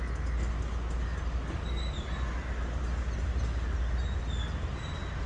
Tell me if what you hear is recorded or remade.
recorded